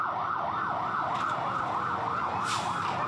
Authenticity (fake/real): real